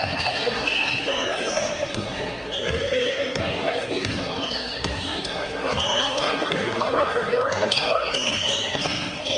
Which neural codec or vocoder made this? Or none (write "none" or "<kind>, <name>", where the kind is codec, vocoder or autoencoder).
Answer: codec, SNAC